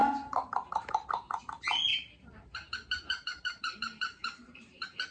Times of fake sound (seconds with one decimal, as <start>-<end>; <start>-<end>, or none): 0.0-1.4; 1.9-5.1